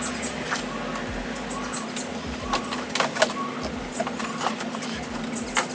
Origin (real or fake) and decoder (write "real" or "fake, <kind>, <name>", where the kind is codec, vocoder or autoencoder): real